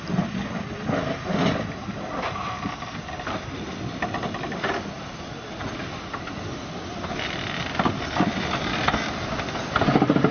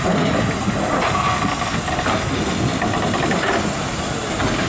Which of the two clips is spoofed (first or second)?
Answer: first